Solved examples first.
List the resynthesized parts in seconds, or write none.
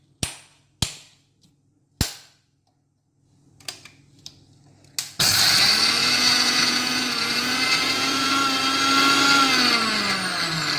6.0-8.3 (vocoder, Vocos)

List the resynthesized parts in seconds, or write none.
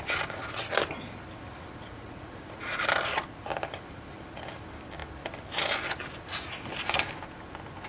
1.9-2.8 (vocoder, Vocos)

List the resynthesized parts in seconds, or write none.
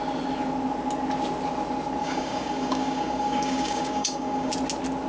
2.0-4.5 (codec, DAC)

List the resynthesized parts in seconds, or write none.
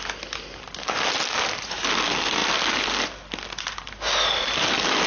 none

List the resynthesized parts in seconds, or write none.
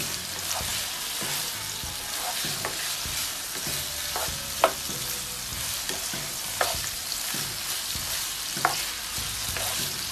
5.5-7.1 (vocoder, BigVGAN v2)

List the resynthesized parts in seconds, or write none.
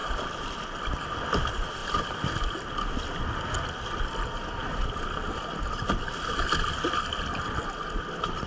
none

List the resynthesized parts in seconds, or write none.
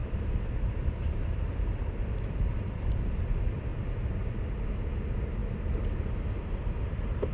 0.0-3.1 (vocoder, BigVGAN v2); 3.7-4.2